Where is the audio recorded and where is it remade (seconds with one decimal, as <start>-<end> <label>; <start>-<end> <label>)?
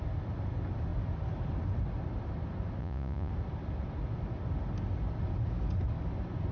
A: 0.0-2.8 recorded; 2.8-3.3 remade; 3.3-6.5 recorded